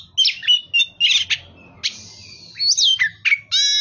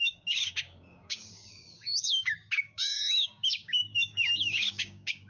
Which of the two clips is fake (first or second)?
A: second